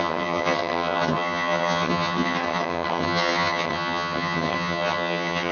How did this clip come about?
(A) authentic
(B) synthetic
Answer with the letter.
B